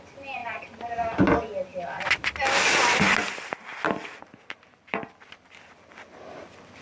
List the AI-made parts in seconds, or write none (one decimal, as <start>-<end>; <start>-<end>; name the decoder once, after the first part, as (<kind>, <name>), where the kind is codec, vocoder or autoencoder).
0.4-0.9 (vocoder, BigVGAN v2); 3.7-6.8